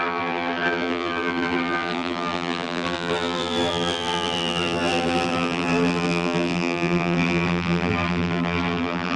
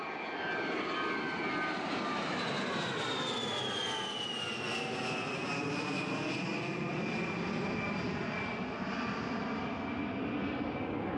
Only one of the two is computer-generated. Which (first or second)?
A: first